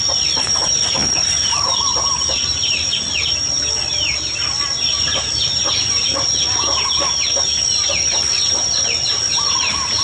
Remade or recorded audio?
remade